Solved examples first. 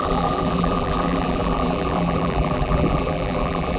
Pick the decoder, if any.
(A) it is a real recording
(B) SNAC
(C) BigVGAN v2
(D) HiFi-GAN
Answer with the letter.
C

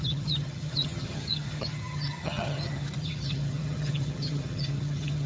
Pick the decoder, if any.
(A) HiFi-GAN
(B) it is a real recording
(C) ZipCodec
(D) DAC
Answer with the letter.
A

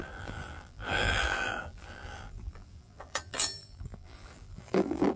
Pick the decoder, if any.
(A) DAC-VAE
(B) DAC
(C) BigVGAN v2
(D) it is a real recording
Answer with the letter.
C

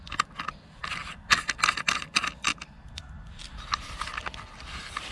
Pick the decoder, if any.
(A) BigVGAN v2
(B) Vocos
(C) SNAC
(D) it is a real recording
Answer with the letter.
D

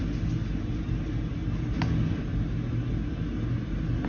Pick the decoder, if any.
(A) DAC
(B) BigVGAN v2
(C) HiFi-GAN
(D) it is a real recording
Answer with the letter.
D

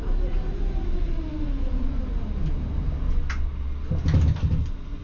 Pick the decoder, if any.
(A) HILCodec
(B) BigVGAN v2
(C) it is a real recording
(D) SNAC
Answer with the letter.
C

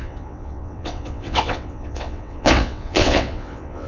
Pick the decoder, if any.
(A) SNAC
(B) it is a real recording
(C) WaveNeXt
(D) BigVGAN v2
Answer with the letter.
C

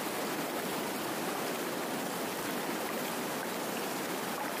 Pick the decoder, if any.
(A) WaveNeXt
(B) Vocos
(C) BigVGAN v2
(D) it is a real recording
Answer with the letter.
D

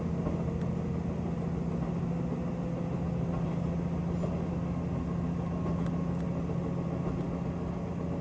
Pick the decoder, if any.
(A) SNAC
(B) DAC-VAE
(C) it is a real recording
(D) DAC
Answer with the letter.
C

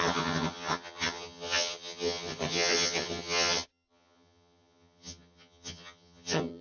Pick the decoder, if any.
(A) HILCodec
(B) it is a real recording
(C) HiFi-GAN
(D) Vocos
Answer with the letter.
C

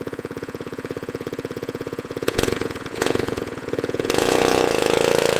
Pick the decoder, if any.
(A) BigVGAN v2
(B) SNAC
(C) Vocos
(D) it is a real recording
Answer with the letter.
C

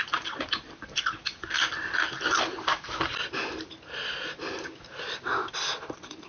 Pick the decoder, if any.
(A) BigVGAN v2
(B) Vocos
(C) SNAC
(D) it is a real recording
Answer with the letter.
D